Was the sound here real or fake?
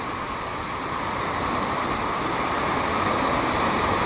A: real